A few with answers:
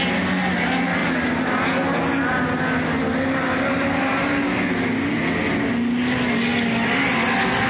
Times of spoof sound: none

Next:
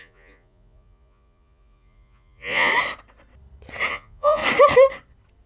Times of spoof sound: 0.0-2.7 (vocoder, Vocos); 3.9-4.4

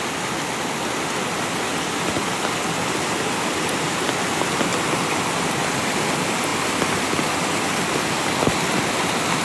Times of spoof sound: none

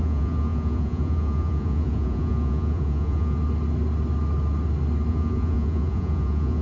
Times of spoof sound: 0.0-3.4 (vocoder, Vocos); 5.1-6.6

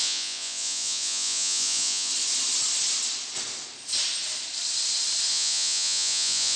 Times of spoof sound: 0.0-2.1 (vocoder, Vocos); 5.3-6.6